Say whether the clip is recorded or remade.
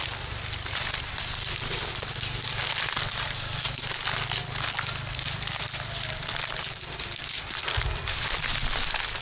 recorded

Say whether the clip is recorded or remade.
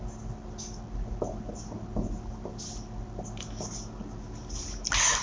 recorded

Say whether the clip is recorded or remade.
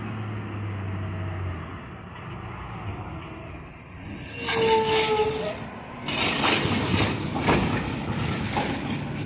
recorded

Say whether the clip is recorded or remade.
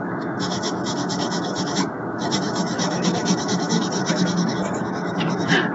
remade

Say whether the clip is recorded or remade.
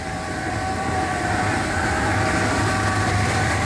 remade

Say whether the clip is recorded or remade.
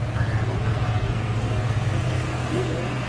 remade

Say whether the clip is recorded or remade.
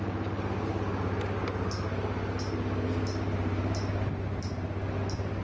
recorded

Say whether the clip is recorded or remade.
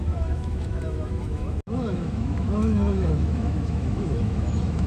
remade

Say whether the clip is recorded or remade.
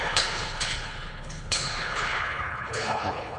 remade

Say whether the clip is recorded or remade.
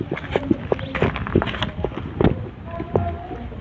recorded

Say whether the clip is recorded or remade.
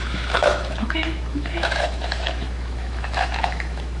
remade